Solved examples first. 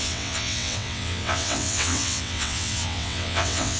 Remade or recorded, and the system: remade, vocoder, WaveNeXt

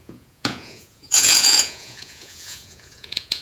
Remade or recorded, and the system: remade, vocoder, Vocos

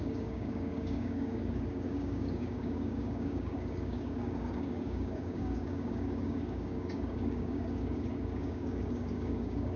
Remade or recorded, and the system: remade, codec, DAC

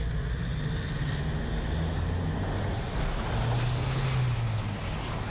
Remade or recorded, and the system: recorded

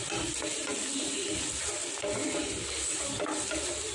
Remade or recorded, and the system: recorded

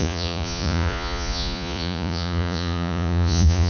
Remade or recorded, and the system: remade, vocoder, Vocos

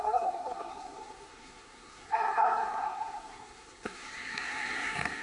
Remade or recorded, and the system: remade, codec, SNAC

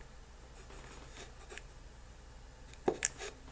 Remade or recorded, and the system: recorded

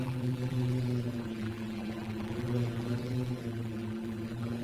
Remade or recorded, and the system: remade, vocoder, BigVGAN v2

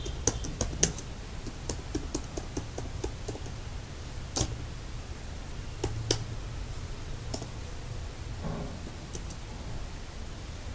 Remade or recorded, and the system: recorded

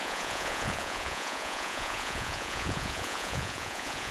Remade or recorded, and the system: remade, vocoder, Vocos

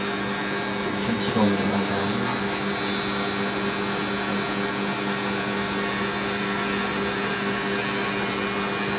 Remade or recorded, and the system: recorded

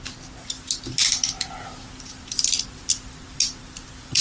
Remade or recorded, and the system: recorded